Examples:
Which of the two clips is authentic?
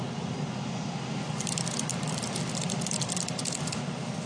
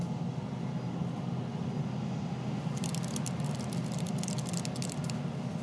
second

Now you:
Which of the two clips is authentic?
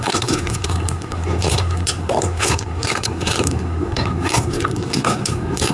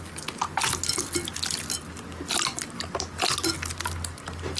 second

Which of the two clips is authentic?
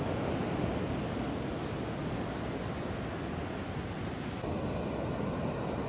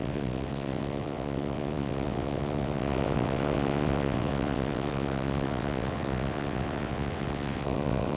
first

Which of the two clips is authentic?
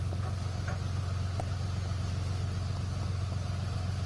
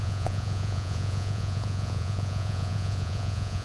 first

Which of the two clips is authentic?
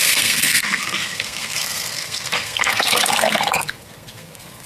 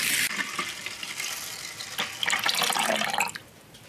second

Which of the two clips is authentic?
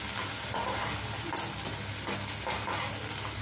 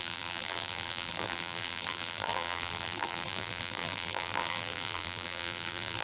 first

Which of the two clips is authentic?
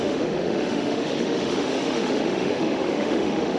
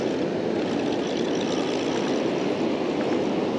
second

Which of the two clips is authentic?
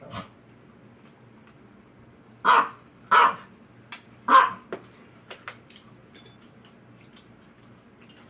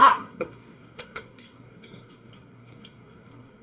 first